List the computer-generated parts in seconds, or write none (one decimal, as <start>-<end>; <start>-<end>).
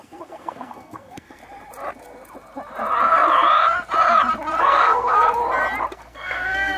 0.0-1.4; 4.6-5.4; 5.9-6.8